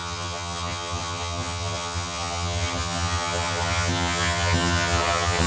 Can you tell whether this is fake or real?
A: fake